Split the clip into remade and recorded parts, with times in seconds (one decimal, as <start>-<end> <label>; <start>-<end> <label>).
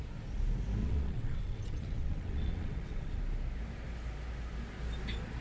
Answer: 0.0-0.8 recorded; 0.8-3.2 remade; 3.2-5.4 recorded